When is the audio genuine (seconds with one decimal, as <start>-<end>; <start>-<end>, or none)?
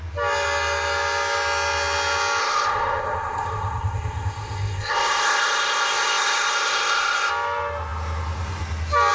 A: 0.0-2.4; 7.3-9.1